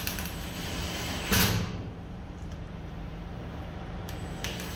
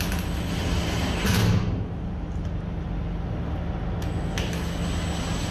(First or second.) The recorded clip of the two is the second